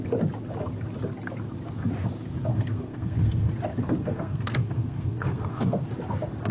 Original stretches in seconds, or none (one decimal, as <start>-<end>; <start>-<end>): 0.0-2.5; 3.5-4.0; 5.8-6.5